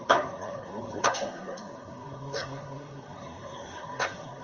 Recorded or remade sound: remade